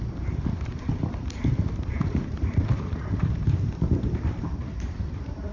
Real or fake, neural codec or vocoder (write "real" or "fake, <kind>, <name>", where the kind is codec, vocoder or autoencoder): fake, vocoder, BigVGAN v2